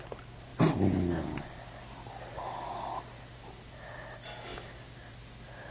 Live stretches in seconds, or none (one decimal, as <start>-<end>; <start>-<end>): 0.0-5.7

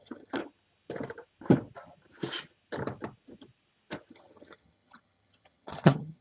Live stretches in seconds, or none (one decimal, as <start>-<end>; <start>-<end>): 0.4-4.1

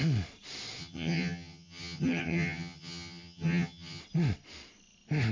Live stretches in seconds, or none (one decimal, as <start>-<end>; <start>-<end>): 0.0-0.8; 4.0-5.3

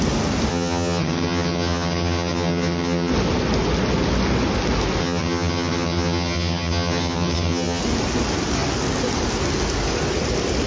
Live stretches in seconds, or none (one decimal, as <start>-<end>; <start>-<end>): 0.0-0.5; 3.1-5.0; 7.8-10.7